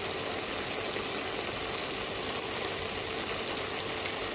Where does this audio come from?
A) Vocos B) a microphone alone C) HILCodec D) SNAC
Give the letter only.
B